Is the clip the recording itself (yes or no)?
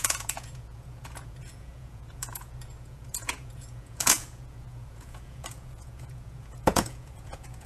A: no